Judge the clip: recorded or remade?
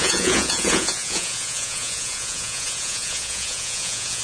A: remade